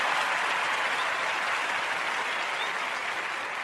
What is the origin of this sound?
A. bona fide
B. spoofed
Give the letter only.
A